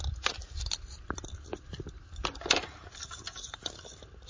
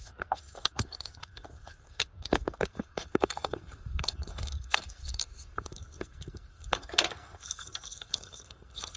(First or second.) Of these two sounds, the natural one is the first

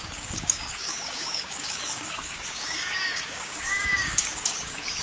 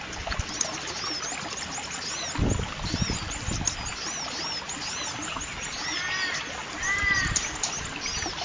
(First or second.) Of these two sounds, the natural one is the second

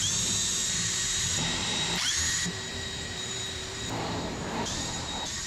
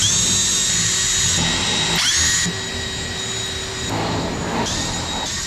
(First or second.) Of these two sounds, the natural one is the second